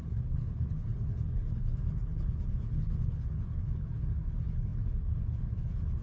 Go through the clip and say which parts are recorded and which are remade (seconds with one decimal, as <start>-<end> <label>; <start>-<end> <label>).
0.0-6.0 remade